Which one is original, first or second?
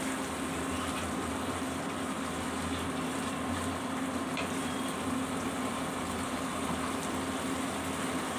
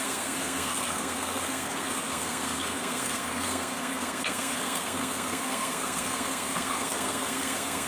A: first